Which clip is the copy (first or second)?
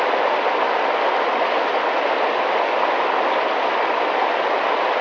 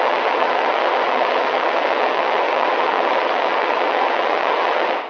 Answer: second